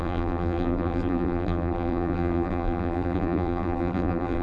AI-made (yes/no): yes